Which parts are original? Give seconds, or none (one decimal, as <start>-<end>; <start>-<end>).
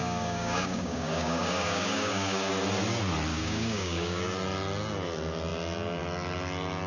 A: 2.5-3.3; 4.2-6.9